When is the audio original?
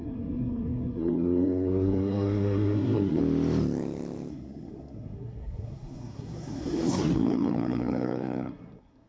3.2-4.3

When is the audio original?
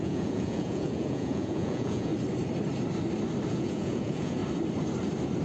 2.1-3.5; 4.4-5.4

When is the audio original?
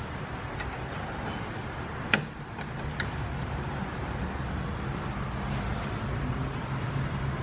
0.0-5.7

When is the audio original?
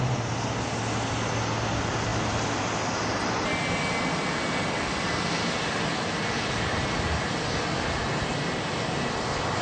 0.0-9.6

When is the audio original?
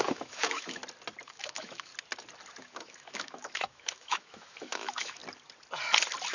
0.8-1.3; 1.9-2.6; 5.2-6.3